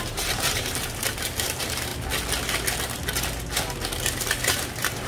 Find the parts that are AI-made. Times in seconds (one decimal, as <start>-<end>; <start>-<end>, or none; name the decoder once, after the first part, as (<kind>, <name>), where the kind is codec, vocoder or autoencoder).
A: 0.0-1.9 (vocoder, BigVGAN v2); 4.5-5.1